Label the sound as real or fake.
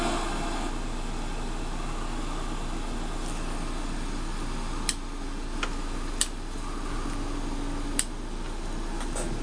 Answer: real